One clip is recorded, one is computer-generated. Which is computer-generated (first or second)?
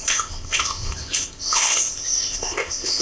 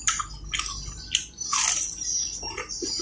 first